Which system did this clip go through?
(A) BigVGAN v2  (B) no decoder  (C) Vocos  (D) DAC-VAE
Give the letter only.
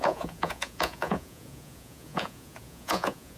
C